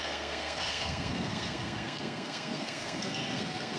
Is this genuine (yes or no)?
no